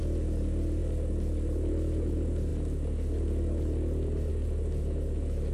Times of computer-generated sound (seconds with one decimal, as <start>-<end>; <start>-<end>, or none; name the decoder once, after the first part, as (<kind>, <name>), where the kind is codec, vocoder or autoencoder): none